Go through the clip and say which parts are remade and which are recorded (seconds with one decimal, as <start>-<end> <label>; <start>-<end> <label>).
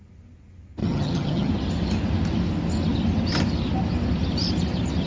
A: 0.0-0.8 recorded; 0.8-1.5 remade; 1.5-5.1 recorded